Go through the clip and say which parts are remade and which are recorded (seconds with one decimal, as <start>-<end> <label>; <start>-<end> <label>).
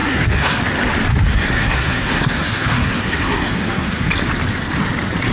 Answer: 0.0-0.6 remade; 0.6-1.3 recorded; 1.3-4.1 remade; 4.1-5.3 recorded